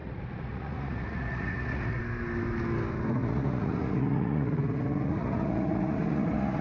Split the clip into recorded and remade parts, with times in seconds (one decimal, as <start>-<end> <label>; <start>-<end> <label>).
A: 0.0-2.0 remade; 2.0-3.2 recorded; 3.2-6.6 remade